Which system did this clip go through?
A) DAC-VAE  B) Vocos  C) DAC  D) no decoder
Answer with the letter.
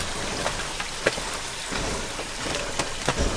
D